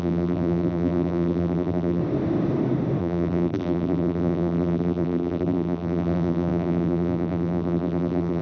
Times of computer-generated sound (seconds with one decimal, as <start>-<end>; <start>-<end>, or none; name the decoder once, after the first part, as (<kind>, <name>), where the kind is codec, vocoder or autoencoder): 0.0-2.0 (vocoder, BigVGAN v2); 3.0-8.4